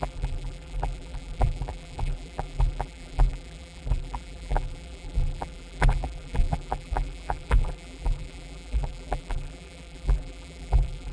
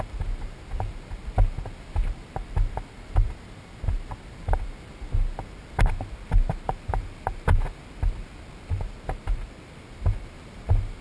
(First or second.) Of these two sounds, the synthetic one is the first